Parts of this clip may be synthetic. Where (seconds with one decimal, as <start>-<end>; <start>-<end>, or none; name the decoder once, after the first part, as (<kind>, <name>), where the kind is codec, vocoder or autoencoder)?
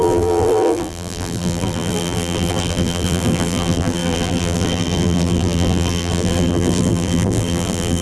0.0-8.0 (vocoder, BigVGAN v2)